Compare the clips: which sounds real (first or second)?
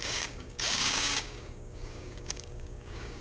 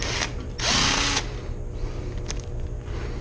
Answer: second